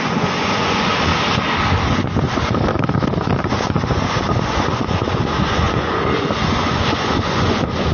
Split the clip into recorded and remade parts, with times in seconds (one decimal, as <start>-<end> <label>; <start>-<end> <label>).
0.0-1.1 remade; 1.1-3.4 recorded; 3.4-7.9 remade